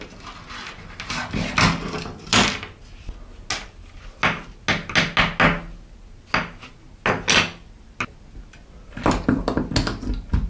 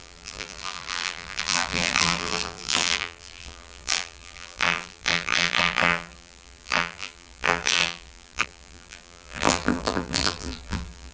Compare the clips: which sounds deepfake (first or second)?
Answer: second